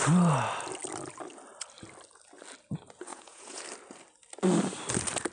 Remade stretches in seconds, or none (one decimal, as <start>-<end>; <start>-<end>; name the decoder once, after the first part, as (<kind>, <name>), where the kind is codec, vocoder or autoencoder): 3.1-3.6 (vocoder, Vocos)

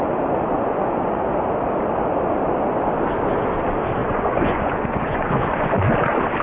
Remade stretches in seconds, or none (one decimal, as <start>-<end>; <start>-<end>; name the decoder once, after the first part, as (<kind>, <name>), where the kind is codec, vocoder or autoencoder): 0.5-1.2 (vocoder, Vocos); 4.0-5.9

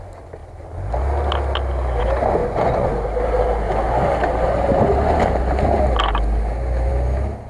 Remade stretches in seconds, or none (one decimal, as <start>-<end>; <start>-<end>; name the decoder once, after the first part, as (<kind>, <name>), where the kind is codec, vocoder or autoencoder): 2.4-2.9 (vocoder, Vocos)

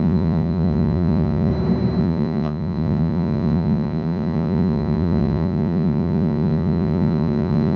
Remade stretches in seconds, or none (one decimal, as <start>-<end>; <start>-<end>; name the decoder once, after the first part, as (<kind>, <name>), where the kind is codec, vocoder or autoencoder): 0.0-1.5 (vocoder, Vocos); 2.0-7.8

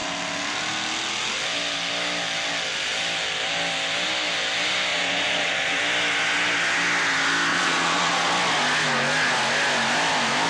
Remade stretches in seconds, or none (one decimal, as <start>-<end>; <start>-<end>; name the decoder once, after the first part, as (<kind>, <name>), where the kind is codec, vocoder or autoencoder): 4.9-5.8 (vocoder, Vocos); 7.5-8.3